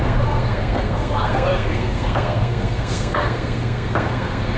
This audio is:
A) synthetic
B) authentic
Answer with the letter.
A